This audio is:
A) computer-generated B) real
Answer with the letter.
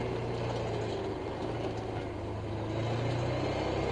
B